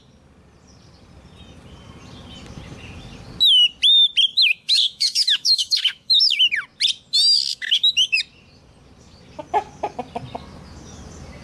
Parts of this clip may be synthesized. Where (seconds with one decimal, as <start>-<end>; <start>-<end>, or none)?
4.3-6.5; 7.5-8.2